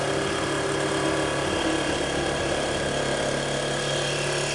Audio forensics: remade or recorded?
recorded